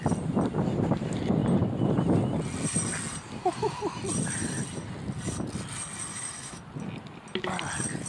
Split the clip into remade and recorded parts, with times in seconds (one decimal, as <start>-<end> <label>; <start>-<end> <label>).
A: 0.0-6.1 recorded; 6.1-6.6 remade; 6.6-8.1 recorded